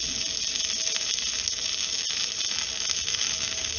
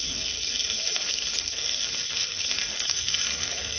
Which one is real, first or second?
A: first